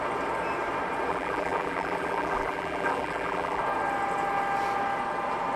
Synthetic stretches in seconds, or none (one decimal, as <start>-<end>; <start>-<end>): 1.1-3.6